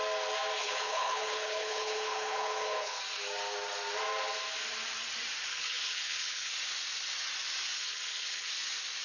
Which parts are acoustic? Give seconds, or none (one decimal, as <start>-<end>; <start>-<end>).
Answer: 0.0-0.6; 3.0-5.5; 6.5-7.8; 8.5-9.0